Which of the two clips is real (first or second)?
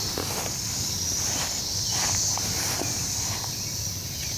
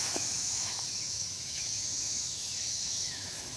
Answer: first